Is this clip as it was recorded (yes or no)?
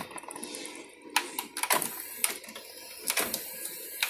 yes